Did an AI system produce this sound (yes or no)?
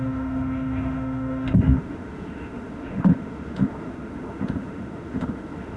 yes